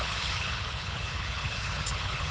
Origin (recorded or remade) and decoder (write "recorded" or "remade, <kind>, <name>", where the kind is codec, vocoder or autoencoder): remade, codec, HILCodec